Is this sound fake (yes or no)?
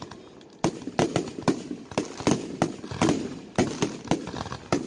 no